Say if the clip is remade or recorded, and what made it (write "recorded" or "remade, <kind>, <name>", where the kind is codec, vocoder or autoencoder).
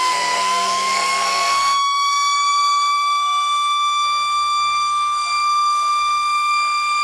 remade, codec, SNAC